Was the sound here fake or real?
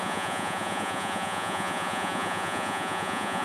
fake